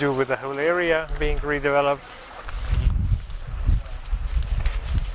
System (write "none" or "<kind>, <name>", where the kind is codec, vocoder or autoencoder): none